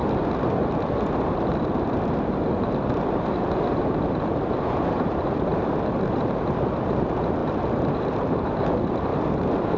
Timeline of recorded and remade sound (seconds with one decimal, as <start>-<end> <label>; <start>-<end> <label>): 0.0-1.6 recorded; 1.6-5.5 remade; 5.5-6.1 recorded; 6.1-9.1 remade; 9.1-9.8 recorded